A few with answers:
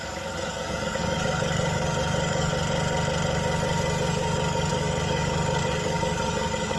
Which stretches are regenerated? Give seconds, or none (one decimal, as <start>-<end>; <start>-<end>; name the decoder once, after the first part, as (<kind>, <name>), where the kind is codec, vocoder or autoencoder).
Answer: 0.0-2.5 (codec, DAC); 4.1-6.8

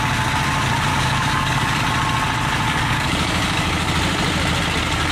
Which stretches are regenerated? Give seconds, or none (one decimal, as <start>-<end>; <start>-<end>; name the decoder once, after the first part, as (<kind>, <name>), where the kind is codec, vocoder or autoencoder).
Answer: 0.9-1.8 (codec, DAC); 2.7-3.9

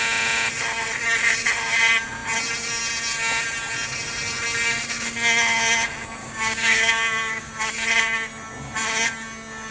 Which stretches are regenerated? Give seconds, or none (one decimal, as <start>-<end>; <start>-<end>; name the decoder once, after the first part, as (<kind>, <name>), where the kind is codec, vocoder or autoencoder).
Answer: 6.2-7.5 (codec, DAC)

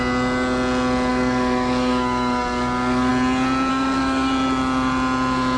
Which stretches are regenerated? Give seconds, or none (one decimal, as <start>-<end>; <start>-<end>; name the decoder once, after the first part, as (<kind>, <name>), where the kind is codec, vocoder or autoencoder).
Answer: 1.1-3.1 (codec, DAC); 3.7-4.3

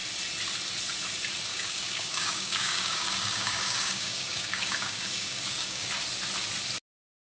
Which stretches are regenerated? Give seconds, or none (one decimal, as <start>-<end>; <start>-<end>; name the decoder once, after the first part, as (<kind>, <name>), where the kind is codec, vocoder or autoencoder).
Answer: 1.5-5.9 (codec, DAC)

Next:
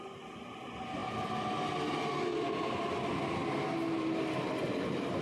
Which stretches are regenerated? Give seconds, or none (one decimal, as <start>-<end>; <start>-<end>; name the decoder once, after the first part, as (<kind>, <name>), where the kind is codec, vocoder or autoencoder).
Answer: none

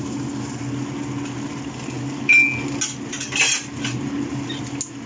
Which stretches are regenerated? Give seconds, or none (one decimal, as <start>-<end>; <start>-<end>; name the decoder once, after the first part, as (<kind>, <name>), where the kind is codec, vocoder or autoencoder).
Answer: none

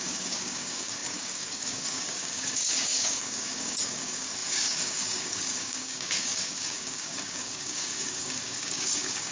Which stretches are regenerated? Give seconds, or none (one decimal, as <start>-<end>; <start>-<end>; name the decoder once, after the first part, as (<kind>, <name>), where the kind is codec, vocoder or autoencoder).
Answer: 0.0-9.3 (codec, DAC)